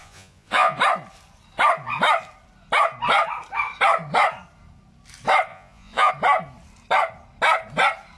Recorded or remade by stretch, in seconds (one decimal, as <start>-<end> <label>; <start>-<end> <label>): 0.0-0.8 remade; 0.8-5.5 recorded; 5.5-6.1 remade; 6.1-8.2 recorded